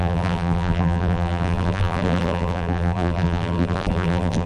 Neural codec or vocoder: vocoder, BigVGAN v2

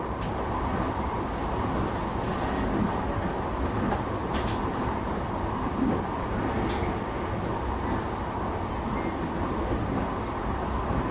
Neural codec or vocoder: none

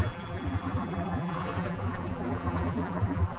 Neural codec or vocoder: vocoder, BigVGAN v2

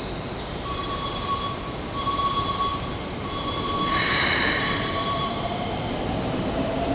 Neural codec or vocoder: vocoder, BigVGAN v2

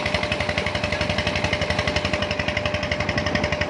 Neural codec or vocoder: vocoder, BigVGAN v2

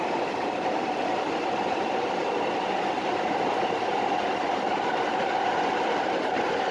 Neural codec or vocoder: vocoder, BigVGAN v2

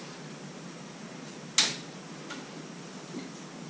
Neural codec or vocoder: none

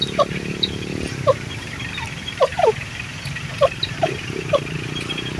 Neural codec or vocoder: vocoder, BigVGAN v2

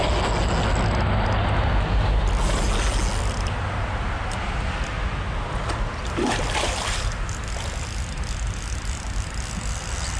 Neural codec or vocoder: none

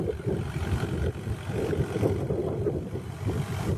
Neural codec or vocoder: none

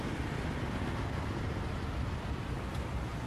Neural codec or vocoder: none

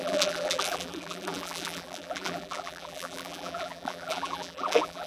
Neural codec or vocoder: vocoder, BigVGAN v2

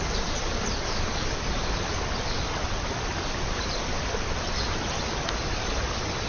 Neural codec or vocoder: vocoder, BigVGAN v2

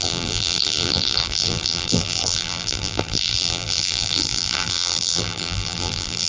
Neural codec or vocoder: vocoder, BigVGAN v2